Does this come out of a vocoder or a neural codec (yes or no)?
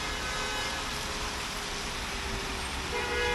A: no